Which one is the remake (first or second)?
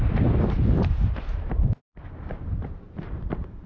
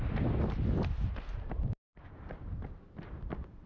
first